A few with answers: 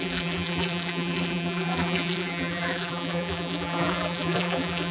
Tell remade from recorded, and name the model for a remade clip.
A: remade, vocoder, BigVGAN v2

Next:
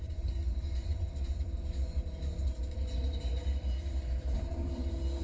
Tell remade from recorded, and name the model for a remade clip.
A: remade, vocoder, BigVGAN v2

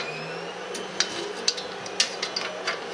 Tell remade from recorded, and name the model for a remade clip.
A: recorded